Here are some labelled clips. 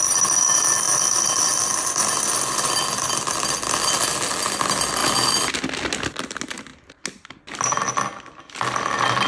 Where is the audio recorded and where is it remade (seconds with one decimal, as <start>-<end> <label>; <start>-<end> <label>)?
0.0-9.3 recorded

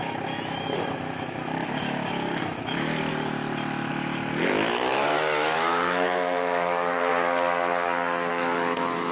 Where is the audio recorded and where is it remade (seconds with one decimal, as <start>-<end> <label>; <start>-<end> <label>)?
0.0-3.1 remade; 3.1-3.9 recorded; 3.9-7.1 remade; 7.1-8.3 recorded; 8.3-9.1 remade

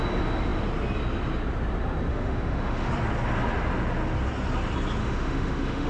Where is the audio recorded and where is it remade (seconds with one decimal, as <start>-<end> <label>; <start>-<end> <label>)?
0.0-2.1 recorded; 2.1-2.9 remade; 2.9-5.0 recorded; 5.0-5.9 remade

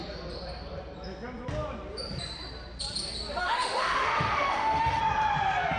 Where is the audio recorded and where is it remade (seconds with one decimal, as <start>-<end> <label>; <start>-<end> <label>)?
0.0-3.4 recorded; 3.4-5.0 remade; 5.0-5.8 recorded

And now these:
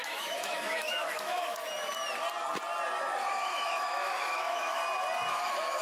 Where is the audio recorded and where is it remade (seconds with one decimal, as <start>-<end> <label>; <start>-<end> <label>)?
0.0-1.7 remade; 1.7-3.3 recorded; 3.3-4.8 remade; 4.8-5.3 recorded; 5.3-5.8 remade

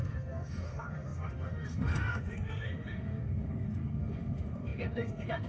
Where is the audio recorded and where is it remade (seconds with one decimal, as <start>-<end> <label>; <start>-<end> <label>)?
0.0-5.5 remade